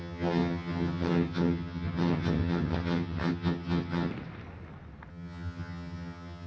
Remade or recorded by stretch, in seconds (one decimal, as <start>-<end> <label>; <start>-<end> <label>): 0.0-4.1 remade; 4.1-5.1 recorded; 5.1-6.5 remade